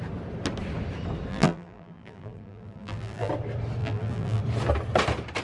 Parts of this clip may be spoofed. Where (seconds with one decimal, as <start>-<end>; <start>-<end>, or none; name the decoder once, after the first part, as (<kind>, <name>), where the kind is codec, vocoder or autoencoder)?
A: 1.3-3.3 (vocoder, BigVGAN v2); 3.8-4.4